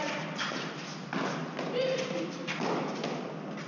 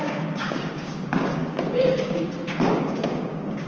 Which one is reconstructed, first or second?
second